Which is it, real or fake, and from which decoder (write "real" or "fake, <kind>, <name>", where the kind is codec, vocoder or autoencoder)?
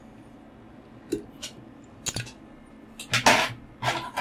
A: real